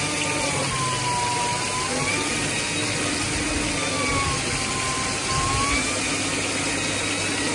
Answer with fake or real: real